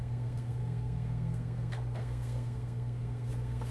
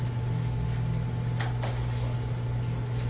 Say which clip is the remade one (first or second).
first